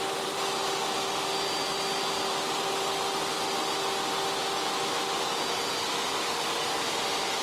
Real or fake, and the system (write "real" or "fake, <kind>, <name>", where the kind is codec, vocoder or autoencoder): real